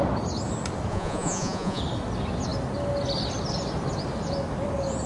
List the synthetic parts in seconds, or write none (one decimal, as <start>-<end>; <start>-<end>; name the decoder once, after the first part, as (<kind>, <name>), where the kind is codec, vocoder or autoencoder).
0.9-1.8 (vocoder, Vocos)

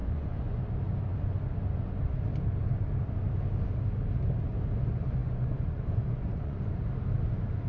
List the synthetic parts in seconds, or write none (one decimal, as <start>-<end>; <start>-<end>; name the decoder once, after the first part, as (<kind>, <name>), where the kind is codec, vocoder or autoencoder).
0.0-0.6 (vocoder, Vocos); 5.2-6.7

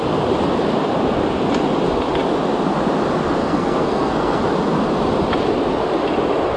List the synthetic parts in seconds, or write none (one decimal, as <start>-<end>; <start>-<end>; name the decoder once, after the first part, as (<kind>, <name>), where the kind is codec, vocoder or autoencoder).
3.4-4.4 (codec, SNAC)

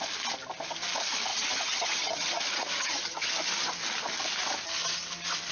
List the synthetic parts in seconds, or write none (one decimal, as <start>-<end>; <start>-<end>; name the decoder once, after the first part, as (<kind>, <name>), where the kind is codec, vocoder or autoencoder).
1.3-3.3 (vocoder, HiFi-GAN)

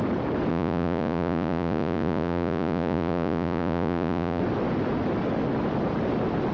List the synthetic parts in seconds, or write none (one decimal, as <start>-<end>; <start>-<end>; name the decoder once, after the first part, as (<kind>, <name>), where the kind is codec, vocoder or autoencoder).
0.5-4.4 (vocoder, Vocos)

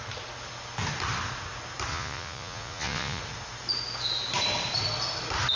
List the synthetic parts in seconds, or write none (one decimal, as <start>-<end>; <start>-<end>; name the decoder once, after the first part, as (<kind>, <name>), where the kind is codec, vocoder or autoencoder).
1.9-3.2 (vocoder, Vocos)